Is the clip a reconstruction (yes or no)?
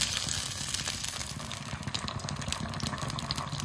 no